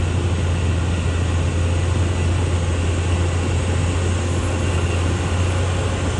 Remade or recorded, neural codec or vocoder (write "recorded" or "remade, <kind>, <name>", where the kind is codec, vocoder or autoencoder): recorded